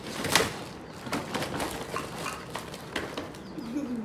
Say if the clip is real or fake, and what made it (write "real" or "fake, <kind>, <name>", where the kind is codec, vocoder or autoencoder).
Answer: real